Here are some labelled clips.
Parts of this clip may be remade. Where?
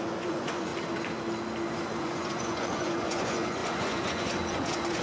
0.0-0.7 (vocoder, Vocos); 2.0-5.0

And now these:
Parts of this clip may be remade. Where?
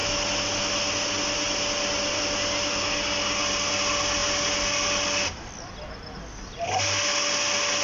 none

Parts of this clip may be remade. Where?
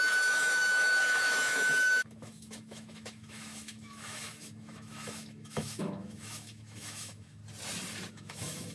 0.0-7.4 (autoencoder, DAC-VAE); 8.1-8.7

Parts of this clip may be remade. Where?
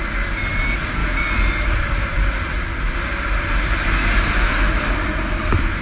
none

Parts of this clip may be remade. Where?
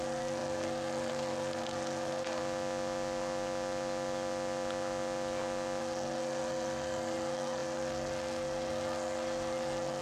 0.0-2.4 (codec, SNAC); 5.8-10.0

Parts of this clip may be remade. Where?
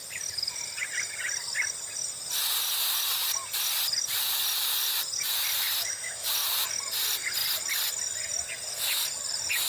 5.8-6.3 (autoencoder, DAC-VAE)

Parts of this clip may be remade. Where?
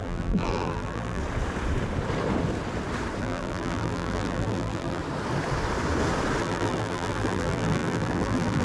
0.0-1.2 (vocoder, BigVGAN v2); 3.2-5.0; 6.4-8.6